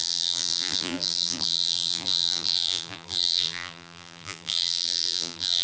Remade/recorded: remade